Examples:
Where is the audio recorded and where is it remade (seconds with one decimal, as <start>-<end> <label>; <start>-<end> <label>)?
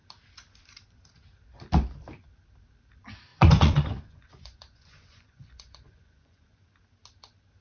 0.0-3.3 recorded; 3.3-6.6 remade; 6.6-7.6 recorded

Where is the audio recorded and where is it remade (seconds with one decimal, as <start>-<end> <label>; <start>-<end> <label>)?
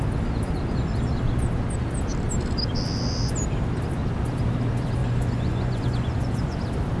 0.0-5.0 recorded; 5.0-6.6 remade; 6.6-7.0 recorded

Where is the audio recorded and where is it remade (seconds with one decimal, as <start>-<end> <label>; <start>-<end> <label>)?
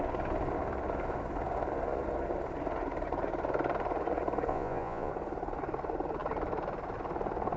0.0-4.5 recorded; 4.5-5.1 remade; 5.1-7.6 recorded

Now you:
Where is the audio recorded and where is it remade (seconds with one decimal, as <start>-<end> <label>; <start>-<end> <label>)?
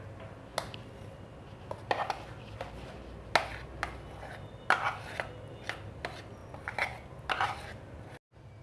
0.0-8.6 recorded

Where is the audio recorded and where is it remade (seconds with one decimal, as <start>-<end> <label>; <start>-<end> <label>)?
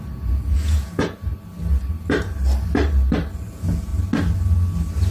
0.0-1.3 remade; 1.3-3.5 recorded; 3.5-3.9 remade; 3.9-5.1 recorded